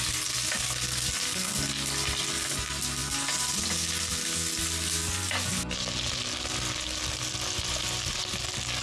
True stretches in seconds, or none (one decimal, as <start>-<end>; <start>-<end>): 0.0-8.8